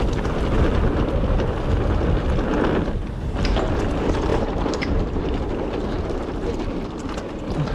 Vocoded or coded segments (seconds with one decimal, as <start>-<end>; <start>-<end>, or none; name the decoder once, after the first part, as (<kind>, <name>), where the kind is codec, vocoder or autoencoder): 4.3-5.2 (vocoder, BigVGAN v2)